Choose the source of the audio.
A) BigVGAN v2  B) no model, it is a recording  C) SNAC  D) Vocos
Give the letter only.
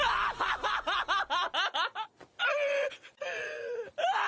B